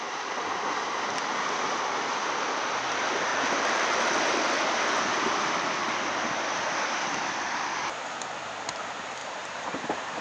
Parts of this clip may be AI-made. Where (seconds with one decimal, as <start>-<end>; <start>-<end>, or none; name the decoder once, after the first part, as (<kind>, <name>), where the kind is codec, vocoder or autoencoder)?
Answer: 3.3-4.2 (vocoder, BigVGAN v2); 9.2-10.2